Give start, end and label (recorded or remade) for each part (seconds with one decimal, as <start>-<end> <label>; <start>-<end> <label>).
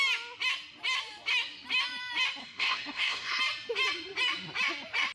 0.0-2.4 recorded; 2.4-3.4 remade; 3.4-5.1 recorded